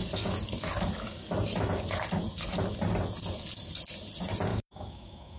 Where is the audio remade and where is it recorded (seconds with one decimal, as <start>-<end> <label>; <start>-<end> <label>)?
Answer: 0.0-4.5 recorded; 4.5-5.4 remade